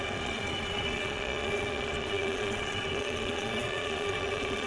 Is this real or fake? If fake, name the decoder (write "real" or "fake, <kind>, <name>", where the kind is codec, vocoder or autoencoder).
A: fake, vocoder, Vocos